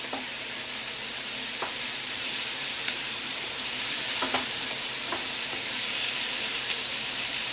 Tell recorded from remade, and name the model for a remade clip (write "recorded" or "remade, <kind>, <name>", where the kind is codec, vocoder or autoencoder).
remade, vocoder, BigVGAN v2